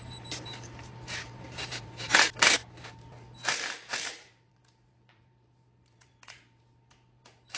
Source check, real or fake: fake